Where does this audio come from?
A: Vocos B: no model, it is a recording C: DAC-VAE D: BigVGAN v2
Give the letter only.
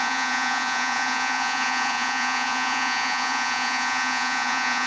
A